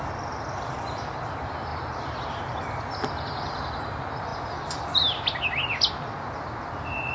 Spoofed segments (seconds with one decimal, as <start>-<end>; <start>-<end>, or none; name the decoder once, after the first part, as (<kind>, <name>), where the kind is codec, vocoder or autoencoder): none